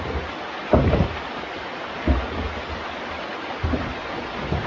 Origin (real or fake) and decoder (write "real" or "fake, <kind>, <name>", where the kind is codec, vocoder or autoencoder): real